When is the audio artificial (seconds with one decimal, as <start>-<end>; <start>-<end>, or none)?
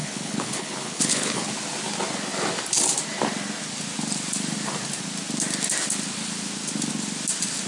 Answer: 0.0-1.5